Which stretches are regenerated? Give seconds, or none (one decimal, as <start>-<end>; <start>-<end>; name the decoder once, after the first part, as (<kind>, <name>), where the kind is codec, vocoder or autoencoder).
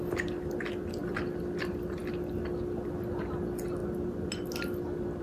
none